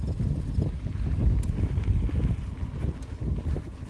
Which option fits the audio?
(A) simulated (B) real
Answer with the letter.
B